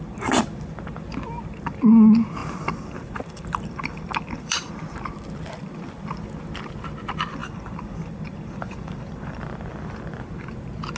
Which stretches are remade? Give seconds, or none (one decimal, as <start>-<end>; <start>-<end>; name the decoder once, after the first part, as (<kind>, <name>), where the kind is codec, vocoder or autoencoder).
2.4-4.7 (vocoder, BigVGAN v2); 7.4-9.4